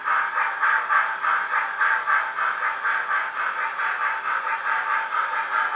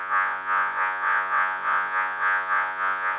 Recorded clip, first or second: first